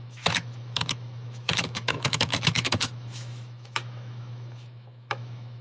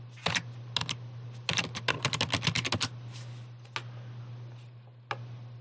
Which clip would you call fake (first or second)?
first